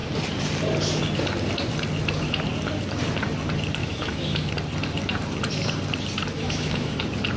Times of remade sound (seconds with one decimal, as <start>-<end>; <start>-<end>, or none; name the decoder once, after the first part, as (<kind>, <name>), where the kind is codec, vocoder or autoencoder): 3.8-4.5 (autoencoder, DAC-VAE); 6.3-7.0